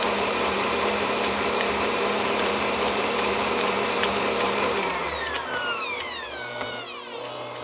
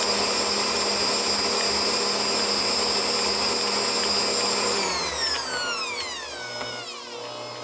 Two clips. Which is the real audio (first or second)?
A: second